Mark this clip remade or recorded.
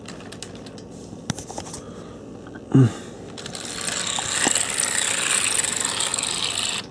recorded